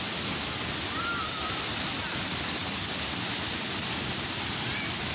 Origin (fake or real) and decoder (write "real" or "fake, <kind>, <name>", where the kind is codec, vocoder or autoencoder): real